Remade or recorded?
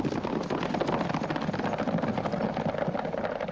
recorded